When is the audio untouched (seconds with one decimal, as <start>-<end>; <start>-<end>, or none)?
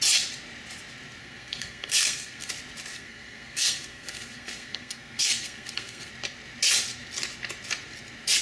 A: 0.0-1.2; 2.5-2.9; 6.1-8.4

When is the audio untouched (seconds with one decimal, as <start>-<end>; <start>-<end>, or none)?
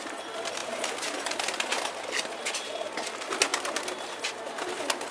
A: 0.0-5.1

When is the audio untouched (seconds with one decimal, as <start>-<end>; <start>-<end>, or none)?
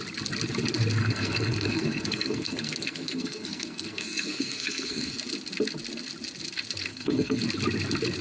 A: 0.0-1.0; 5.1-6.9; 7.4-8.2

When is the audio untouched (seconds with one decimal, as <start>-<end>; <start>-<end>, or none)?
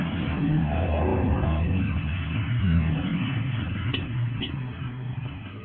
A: none